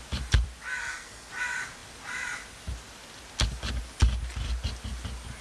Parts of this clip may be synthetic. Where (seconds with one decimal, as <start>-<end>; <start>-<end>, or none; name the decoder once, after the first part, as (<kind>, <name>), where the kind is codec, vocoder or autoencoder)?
0.8-1.3 (codec, SNAC)